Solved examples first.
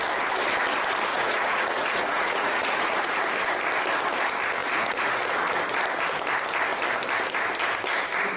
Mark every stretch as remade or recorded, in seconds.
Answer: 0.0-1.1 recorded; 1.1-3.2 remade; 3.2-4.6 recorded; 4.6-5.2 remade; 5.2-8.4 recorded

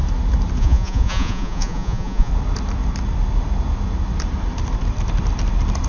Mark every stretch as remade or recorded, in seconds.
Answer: 0.0-0.6 recorded; 0.6-2.3 remade; 2.3-5.9 recorded

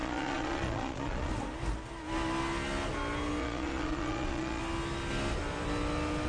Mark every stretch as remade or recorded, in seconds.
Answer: 0.0-1.3 remade; 1.3-3.4 recorded; 3.4-4.6 remade; 4.6-6.3 recorded

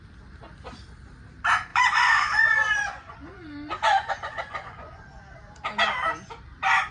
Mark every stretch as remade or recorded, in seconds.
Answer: 0.0-1.7 recorded; 1.7-5.2 remade; 5.2-6.9 recorded